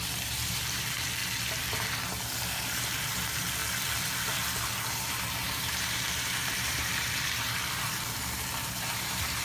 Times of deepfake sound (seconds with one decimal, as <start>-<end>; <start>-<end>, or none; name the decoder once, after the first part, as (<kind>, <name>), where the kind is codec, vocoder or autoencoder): 0.0-1.2 (vocoder, BigVGAN v2); 2.4-3.6; 4.9-9.4